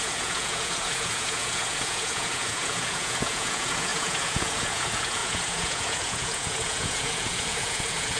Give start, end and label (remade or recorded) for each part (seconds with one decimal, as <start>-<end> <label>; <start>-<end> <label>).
0.0-8.2 remade